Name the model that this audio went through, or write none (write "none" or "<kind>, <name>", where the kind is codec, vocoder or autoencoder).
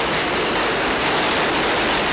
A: none